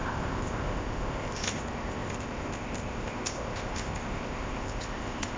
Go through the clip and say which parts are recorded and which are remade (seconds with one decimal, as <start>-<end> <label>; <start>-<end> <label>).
0.0-5.4 remade